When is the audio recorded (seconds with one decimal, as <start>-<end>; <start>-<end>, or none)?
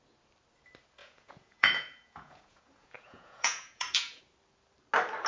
0.0-1.0; 4.2-5.3